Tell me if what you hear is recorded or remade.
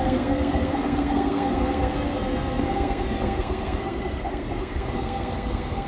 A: remade